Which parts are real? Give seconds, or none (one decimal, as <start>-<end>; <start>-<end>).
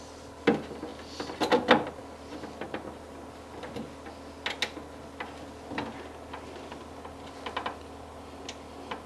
0.0-9.1